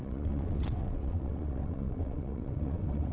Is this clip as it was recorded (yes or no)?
no